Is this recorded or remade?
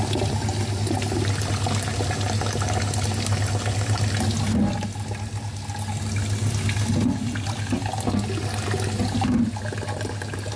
recorded